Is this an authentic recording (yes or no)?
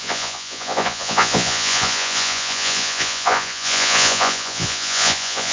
no